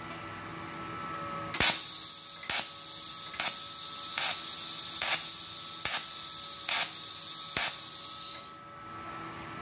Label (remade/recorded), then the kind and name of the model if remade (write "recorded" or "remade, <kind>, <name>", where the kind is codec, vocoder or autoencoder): recorded